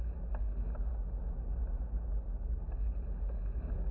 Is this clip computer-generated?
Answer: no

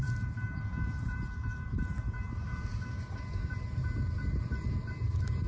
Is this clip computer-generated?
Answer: yes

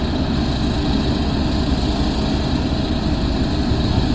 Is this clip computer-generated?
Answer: no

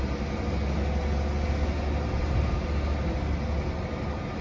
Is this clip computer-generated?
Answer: no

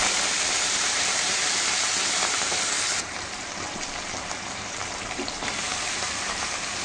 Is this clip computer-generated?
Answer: yes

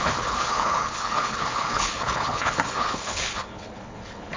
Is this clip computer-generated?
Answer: yes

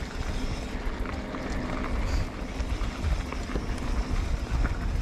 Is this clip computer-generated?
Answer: no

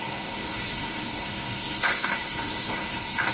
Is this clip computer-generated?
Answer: yes